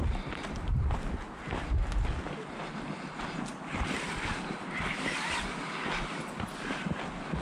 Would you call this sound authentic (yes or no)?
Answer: yes